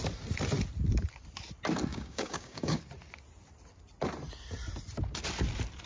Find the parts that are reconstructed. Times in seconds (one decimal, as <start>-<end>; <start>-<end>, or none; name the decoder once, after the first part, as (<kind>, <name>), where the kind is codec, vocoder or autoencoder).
1.9-2.8 (codec, DAC)